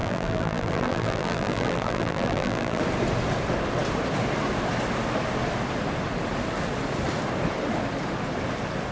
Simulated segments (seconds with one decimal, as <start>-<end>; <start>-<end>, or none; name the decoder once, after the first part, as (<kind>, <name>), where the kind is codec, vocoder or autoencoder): 0.0-2.8 (vocoder, BigVGAN v2)